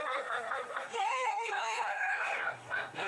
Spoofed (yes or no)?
yes